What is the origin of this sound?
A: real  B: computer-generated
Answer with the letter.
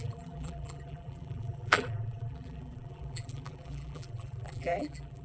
B